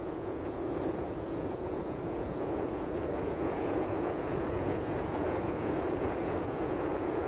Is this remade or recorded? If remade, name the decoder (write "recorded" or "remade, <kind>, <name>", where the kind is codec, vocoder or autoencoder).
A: remade, vocoder, Vocos